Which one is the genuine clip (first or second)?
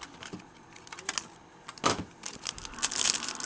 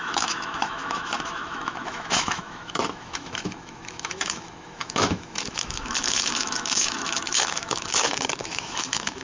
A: first